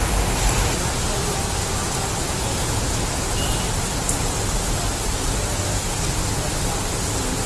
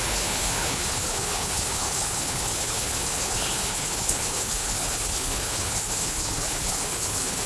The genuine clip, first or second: first